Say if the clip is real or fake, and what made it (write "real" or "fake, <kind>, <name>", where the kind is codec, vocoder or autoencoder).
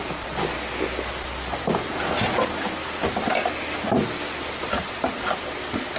real